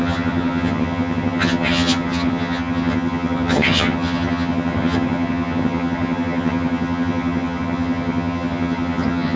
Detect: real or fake fake